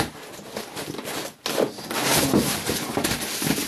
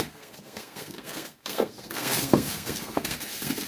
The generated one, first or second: second